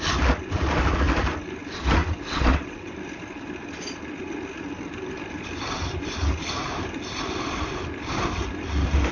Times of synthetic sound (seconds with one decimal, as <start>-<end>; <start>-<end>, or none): 2.0-2.9